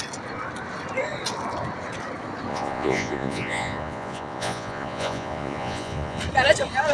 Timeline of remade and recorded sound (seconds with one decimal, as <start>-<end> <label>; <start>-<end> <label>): 0.0-2.5 recorded; 2.5-6.2 remade; 6.2-6.9 recorded